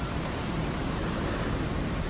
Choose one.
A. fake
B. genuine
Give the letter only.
A